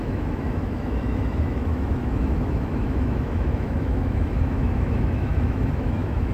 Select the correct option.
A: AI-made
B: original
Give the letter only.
A